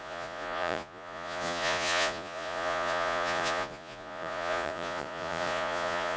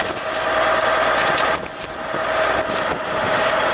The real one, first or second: second